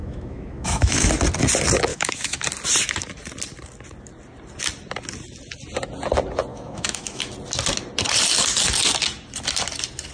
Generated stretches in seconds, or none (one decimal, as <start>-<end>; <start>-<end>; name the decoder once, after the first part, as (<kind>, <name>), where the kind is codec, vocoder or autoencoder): 0.0-1.1 (autoencoder, DAC-VAE); 1.9-2.4; 6.5-7.3